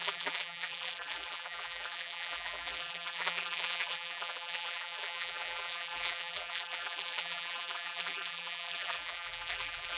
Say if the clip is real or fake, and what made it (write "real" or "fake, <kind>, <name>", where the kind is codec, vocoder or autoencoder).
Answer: fake, vocoder, BigVGAN v2